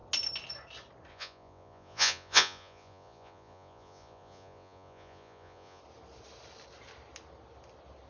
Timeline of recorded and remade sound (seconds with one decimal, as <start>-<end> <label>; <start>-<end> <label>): 0.0-1.1 recorded; 1.1-5.8 remade; 5.8-8.1 recorded